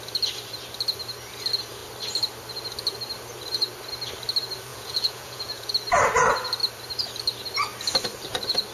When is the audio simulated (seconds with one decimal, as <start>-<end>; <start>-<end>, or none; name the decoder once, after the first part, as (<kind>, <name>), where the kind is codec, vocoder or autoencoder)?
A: 4.7-5.7 (vocoder, Vocos)